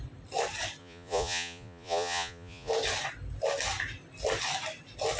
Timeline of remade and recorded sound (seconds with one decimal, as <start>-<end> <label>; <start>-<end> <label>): 0.0-0.8 recorded; 0.8-2.7 remade; 2.7-5.2 recorded